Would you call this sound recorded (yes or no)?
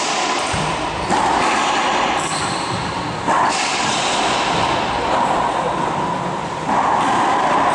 no